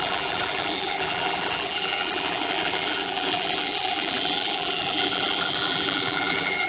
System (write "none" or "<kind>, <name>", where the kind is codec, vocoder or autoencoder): vocoder, BigVGAN v2